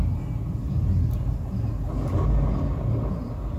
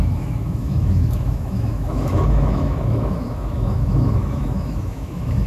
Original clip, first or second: first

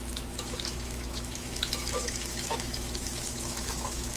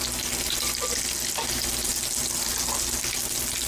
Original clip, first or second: second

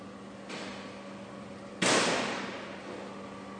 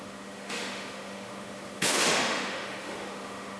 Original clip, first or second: first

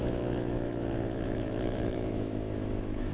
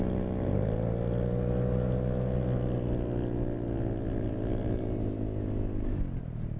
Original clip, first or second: second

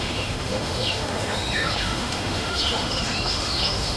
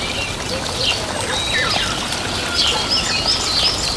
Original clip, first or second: second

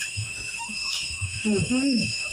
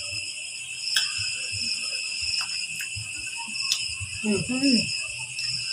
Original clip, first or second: second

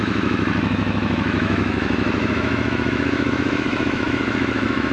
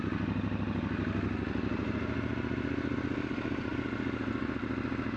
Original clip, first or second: second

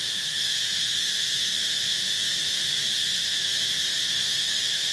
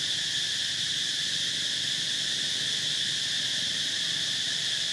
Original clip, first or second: second